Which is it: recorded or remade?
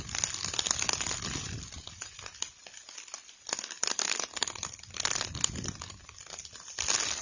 recorded